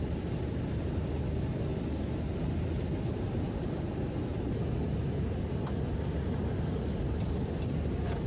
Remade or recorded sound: recorded